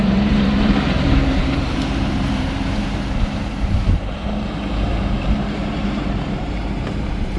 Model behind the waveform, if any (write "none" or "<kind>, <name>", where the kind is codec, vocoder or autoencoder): vocoder, BigVGAN v2